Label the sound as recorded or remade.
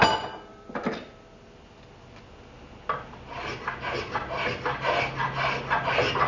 recorded